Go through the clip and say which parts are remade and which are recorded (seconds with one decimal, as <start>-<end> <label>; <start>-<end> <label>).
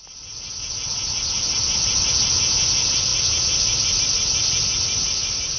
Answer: 0.0-5.6 recorded